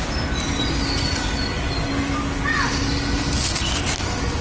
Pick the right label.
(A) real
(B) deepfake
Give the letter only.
A